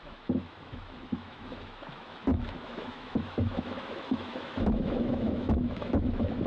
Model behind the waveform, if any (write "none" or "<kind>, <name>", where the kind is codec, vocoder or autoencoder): autoencoder, DAC-VAE